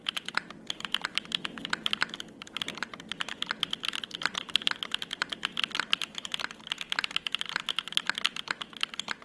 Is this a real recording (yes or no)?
yes